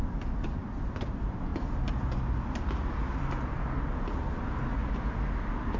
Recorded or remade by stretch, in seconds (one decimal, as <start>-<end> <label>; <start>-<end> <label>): 0.0-5.8 recorded